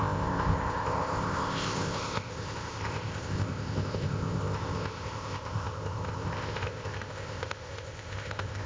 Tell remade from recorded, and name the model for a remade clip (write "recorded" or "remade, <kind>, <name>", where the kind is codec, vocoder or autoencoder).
remade, codec, ZipCodec